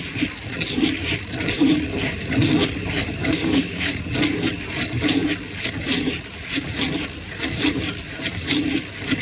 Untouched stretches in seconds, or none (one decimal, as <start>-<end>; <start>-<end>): 0.0-3.2; 3.9-9.2